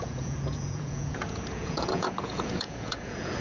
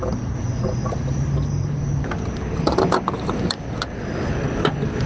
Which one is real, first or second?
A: second